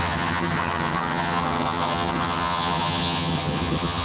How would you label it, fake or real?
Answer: fake